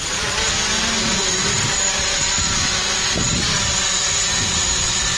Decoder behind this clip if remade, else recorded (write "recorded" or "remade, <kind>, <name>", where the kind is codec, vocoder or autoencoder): remade, vocoder, BigVGAN v2